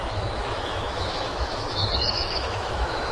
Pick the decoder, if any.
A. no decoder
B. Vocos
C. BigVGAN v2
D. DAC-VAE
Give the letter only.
D